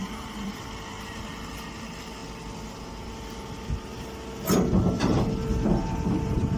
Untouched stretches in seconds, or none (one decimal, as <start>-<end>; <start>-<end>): 1.5-6.6